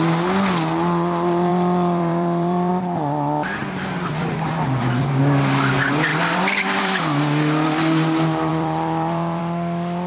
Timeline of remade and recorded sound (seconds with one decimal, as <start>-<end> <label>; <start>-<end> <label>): 0.0-1.5 recorded; 1.5-2.7 remade; 2.7-3.6 recorded; 3.6-5.2 remade; 5.2-6.1 recorded; 6.1-7.0 remade; 7.0-8.5 recorded; 8.5-9.4 remade; 9.4-10.1 recorded